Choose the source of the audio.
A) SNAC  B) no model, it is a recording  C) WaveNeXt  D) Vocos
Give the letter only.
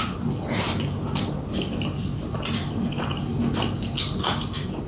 B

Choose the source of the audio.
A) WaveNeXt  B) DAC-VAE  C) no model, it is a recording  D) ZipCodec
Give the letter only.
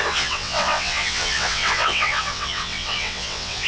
A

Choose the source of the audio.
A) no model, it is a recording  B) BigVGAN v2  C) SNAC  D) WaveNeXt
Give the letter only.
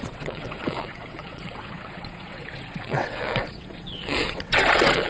D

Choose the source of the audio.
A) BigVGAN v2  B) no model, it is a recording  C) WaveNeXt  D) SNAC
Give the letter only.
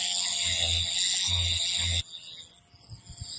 B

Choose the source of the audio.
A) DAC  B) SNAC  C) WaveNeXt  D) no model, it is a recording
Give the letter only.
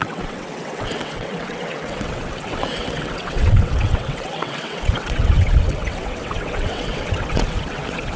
C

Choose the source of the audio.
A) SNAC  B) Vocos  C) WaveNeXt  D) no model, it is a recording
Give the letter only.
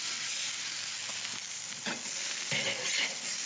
D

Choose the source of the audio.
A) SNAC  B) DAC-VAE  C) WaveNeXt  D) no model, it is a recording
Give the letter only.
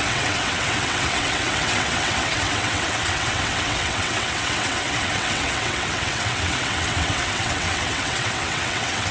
C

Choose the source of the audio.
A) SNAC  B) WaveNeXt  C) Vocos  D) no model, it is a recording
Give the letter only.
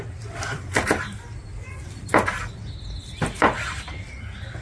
D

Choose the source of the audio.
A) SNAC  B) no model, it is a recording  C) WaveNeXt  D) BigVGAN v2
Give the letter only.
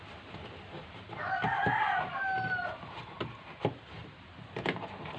B